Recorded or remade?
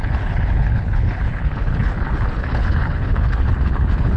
remade